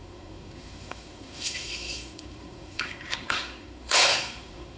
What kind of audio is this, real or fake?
fake